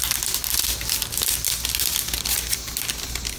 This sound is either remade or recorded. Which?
recorded